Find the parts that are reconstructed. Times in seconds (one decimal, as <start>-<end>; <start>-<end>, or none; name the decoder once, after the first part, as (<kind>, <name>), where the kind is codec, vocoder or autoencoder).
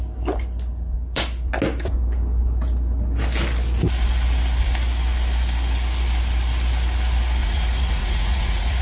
7.4-8.8 (vocoder, Vocos)